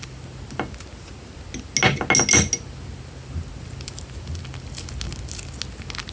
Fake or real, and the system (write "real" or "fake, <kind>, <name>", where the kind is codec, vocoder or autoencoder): real